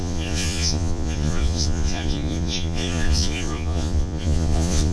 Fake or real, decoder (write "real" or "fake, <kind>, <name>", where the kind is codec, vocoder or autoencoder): fake, vocoder, Vocos